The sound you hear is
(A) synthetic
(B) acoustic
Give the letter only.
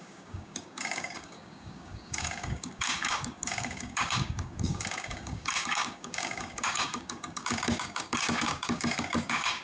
A